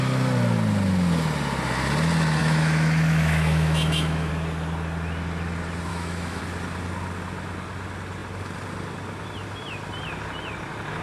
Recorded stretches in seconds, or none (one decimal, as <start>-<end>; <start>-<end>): 0.0-2.4; 4.3-5.9; 6.4-11.0